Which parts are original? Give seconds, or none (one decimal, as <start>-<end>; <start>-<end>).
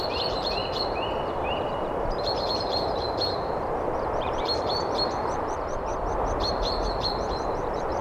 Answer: 0.6-1.4; 5.9-6.5